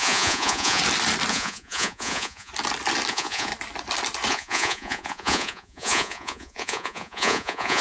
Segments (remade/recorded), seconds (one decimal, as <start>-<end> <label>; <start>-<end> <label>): 0.0-0.8 remade; 0.8-1.3 recorded; 1.3-2.5 remade; 2.5-3.1 recorded; 3.1-3.5 remade; 3.5-4.3 recorded; 4.3-7.8 remade